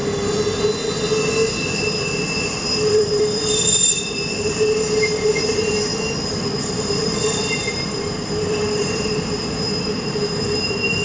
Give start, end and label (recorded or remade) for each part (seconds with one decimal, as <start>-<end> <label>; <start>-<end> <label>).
0.0-2.8 recorded; 2.8-5.9 remade; 5.9-6.6 recorded; 6.6-11.0 remade